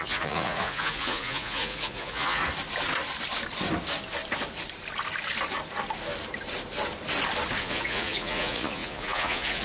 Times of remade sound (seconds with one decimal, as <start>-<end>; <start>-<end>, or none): 0.0-2.4; 7.6-9.6